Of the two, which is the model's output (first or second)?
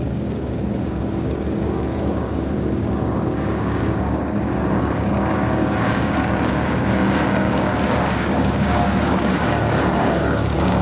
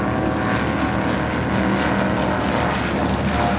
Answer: first